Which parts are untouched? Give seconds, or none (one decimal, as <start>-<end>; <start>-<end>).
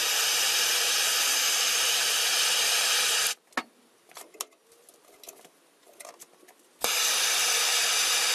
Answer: 0.0-8.3